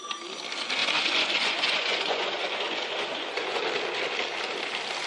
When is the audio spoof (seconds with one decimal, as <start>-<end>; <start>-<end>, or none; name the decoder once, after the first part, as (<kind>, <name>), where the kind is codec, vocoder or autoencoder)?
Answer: 0.8-3.6 (vocoder, Vocos)